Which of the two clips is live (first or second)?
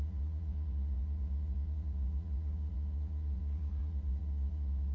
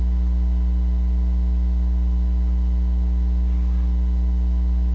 second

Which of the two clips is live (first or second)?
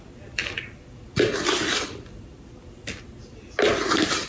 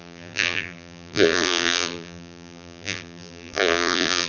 first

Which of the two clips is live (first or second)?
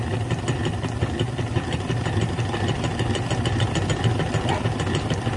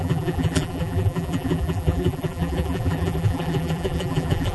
first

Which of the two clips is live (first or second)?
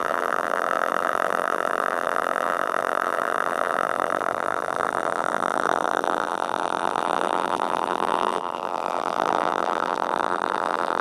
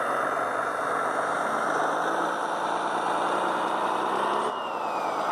second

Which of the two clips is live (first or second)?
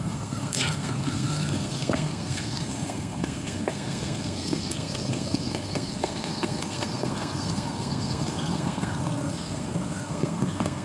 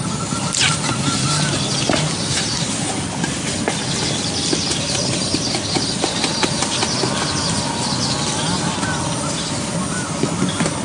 second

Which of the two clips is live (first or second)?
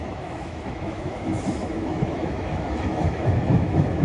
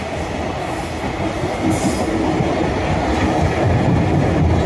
second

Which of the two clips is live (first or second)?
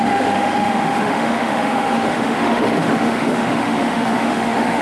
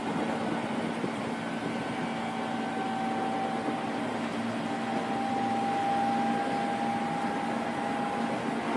second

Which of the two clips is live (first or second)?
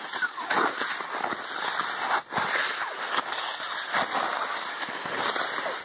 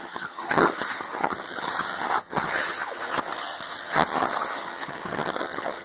first